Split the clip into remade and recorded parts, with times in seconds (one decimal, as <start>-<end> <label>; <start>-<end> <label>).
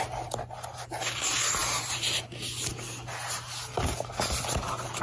0.0-5.0 recorded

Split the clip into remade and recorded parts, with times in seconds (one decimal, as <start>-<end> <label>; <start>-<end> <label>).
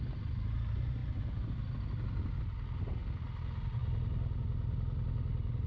0.0-5.7 recorded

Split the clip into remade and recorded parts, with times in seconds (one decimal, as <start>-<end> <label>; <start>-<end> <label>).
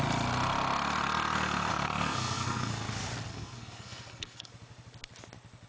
0.0-1.7 recorded; 1.7-2.7 remade; 2.7-3.3 recorded; 3.3-4.5 remade; 4.5-5.7 recorded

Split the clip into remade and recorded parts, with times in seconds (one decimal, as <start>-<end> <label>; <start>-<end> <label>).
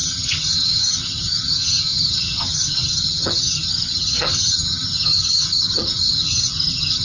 0.0-7.0 remade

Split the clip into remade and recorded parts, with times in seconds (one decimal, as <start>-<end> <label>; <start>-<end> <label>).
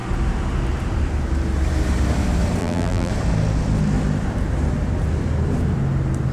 0.0-2.6 recorded; 2.6-3.1 remade; 3.1-6.3 recorded